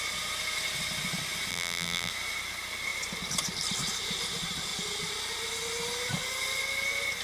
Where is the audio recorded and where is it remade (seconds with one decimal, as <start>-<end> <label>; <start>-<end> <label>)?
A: 0.0-1.5 recorded; 1.5-2.1 remade; 2.1-7.2 recorded